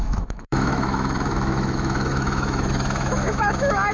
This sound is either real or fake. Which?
fake